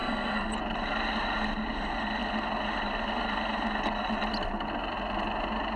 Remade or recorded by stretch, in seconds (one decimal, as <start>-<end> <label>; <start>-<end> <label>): 0.0-0.5 remade; 0.5-5.8 recorded